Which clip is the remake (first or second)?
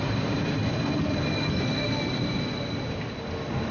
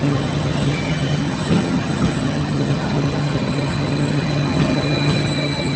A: second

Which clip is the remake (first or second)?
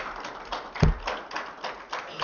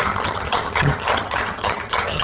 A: second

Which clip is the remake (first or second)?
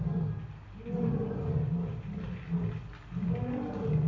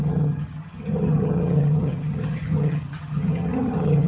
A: second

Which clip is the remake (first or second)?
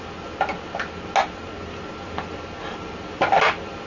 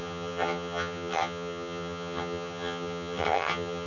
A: second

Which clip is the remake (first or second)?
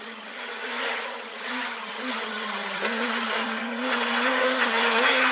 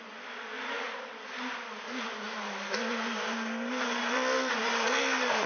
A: first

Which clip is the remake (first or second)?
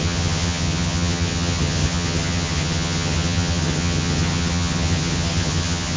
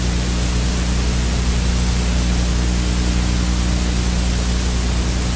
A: first